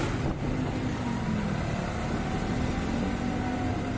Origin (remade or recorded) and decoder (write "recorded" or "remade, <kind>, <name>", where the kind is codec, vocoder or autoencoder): recorded